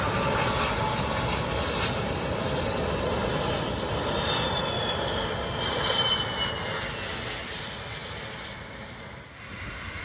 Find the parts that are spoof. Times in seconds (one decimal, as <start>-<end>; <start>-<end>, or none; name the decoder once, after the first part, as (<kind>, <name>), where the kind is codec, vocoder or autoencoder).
none